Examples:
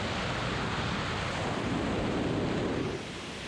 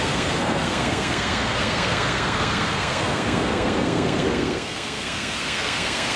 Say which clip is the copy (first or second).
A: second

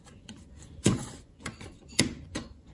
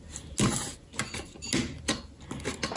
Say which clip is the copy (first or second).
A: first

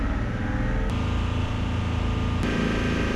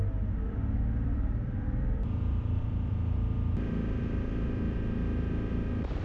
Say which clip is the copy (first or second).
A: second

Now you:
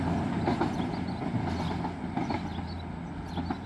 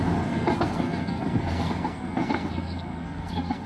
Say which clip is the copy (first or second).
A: second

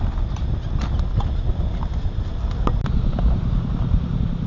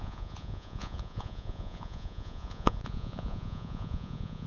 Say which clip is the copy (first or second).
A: second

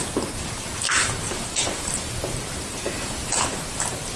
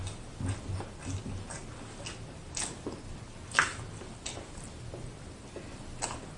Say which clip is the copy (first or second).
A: first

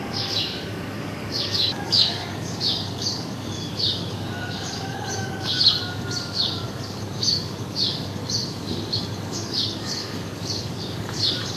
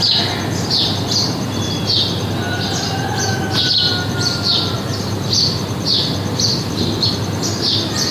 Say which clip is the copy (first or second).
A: first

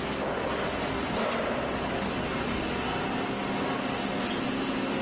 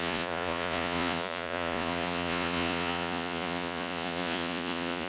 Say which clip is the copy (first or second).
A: second